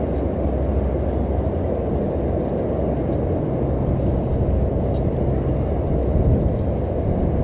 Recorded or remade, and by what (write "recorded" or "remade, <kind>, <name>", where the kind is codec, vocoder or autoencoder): recorded